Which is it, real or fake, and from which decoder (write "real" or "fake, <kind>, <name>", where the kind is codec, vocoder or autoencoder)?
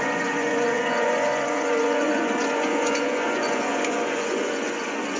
fake, vocoder, Vocos